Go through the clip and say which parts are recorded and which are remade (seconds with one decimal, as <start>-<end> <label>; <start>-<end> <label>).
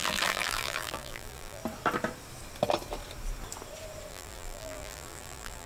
0.0-1.6 remade; 1.6-4.1 recorded; 4.1-5.7 remade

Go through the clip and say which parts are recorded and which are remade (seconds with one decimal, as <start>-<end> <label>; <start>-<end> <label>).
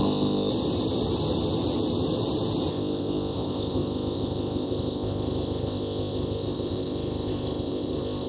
0.0-0.5 remade; 0.5-2.7 recorded; 2.7-8.3 remade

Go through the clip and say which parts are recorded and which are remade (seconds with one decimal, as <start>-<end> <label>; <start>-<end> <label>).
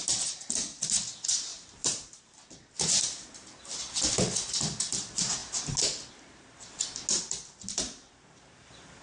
0.0-1.5 recorded; 1.5-2.2 remade; 2.2-9.0 recorded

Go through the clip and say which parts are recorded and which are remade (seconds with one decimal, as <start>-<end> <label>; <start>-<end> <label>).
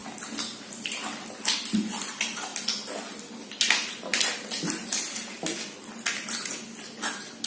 0.0-7.5 recorded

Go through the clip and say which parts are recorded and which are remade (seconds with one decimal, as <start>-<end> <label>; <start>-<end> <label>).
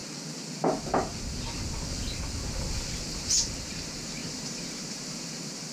0.0-3.4 recorded; 3.4-5.7 remade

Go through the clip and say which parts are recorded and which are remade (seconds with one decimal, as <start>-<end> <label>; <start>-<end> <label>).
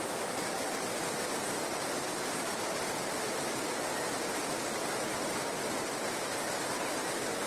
0.0-2.1 recorded; 2.1-3.3 remade; 3.3-7.5 recorded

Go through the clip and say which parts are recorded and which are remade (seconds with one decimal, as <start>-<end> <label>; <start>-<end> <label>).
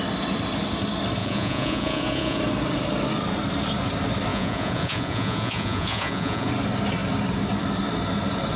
0.0-1.2 recorded; 1.2-2.4 remade; 2.4-4.3 recorded; 4.3-6.5 remade; 6.5-8.6 recorded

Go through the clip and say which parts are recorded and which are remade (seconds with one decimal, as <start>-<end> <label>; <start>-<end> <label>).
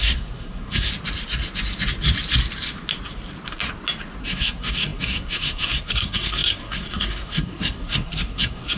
0.0-0.9 remade; 0.9-4.2 recorded; 4.2-8.8 remade